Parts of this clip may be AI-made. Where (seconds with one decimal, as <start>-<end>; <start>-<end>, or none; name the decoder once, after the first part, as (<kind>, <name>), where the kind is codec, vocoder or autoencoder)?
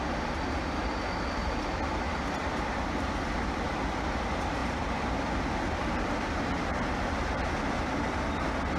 none